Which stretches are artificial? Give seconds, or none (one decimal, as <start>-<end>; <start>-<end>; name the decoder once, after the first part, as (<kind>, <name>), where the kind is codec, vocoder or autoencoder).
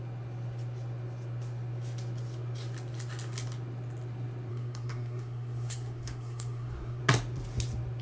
4.5-7.0 (codec, SNAC)